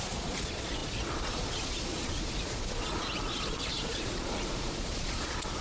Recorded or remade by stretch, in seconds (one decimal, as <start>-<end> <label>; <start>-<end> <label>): 0.0-5.6 remade